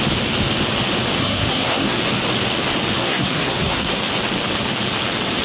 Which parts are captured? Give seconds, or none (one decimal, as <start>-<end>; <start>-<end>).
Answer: 0.0-1.2; 2.0-3.0; 4.0-5.4